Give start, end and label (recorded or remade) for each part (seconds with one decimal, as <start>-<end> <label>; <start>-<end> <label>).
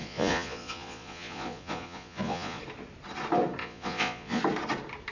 0.0-2.6 remade; 2.6-3.6 recorded; 3.6-4.4 remade; 4.4-5.1 recorded